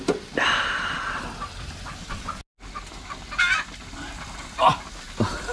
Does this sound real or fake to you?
real